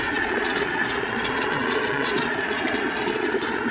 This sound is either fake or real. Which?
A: fake